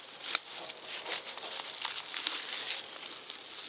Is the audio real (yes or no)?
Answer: yes